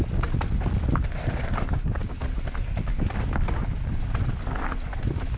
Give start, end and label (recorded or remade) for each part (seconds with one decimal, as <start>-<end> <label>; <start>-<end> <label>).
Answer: 0.0-2.0 remade; 2.0-3.3 recorded; 3.3-5.4 remade